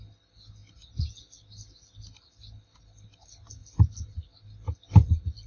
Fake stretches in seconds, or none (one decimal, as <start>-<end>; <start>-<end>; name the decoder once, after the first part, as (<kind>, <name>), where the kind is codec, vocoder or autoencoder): none